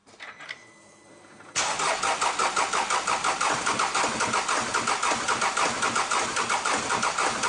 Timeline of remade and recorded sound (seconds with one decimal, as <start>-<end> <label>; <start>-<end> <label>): 0.0-7.5 recorded